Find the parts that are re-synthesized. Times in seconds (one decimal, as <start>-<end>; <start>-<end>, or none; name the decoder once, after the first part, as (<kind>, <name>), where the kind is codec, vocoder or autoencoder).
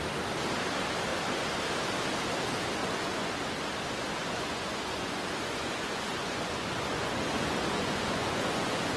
1.1-1.6 (vocoder, Vocos); 2.8-3.3; 4.2-9.0